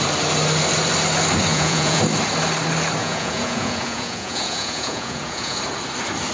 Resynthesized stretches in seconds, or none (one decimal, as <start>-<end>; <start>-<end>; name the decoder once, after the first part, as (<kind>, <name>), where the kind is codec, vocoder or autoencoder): 1.5-2.0 (vocoder, Vocos); 3.0-5.6